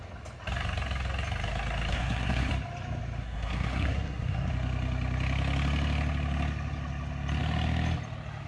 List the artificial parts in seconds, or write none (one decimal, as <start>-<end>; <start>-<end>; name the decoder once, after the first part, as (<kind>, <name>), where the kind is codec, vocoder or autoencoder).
1.9-2.5 (codec, SNAC); 3.2-4.5